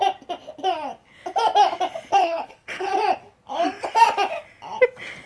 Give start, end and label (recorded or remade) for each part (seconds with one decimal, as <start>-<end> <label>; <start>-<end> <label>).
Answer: 0.0-2.1 recorded; 2.1-2.9 remade; 2.9-5.3 recorded